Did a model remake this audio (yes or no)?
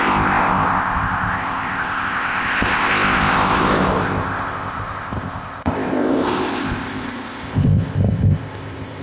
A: yes